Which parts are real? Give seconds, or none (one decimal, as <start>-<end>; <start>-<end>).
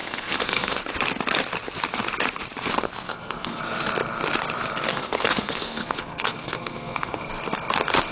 0.8-2.8; 3.6-4.9; 7.2-8.1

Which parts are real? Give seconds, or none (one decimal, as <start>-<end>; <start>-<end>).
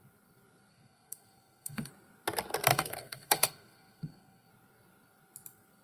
0.0-0.7; 1.9-2.7; 4.5-5.8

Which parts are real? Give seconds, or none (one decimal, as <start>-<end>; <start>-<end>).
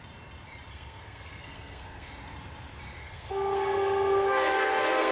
0.0-0.7; 2.1-3.0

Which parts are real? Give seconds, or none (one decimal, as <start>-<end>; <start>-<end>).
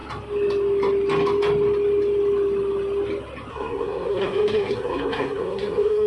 0.0-3.5